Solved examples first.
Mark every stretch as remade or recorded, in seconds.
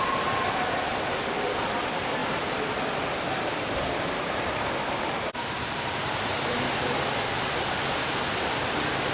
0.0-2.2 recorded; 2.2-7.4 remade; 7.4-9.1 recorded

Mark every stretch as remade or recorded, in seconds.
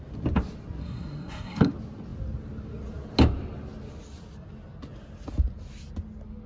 0.0-0.8 recorded; 0.8-1.7 remade; 1.7-6.5 recorded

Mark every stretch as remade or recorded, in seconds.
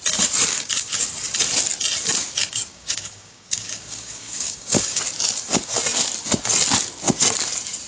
0.0-0.5 recorded; 0.5-1.0 remade; 1.0-2.7 recorded; 2.7-5.0 remade; 5.0-7.9 recorded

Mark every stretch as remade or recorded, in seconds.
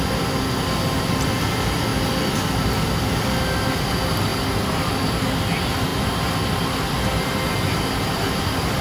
0.0-8.8 recorded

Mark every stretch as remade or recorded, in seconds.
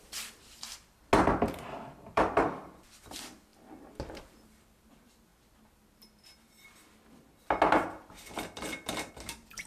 0.0-1.0 remade; 1.0-1.7 recorded; 1.7-3.5 remade; 3.5-4.2 recorded; 4.2-5.3 remade; 5.3-9.1 recorded; 9.1-9.7 remade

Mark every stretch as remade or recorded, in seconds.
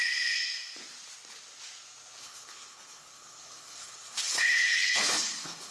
0.0-2.2 recorded; 2.2-5.7 remade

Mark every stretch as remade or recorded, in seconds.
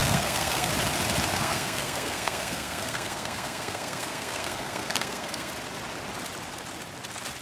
0.0-0.7 remade; 0.7-1.3 recorded; 1.3-5.5 remade; 5.5-7.4 recorded